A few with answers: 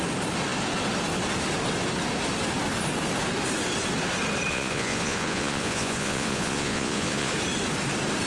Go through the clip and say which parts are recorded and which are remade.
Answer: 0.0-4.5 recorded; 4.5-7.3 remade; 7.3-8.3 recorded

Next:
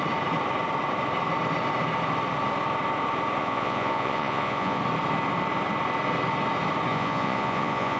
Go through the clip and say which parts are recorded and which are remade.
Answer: 0.0-3.4 recorded; 3.4-4.8 remade; 4.8-6.9 recorded; 6.9-8.0 remade

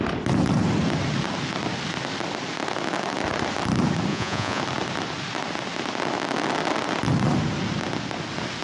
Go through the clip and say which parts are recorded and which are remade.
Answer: 0.0-4.1 recorded; 4.1-4.6 remade; 4.6-8.6 recorded